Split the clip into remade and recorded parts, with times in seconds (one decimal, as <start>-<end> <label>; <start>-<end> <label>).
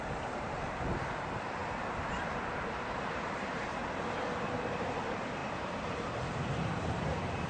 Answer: 0.0-1.6 remade; 1.6-2.5 recorded; 2.5-3.8 remade; 3.8-4.4 recorded; 4.4-7.5 remade